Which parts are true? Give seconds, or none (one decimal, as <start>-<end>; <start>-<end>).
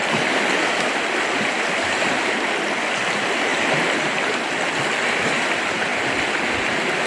0.0-7.1